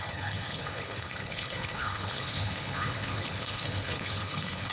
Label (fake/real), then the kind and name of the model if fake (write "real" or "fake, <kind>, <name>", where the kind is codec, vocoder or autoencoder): fake, codec, HILCodec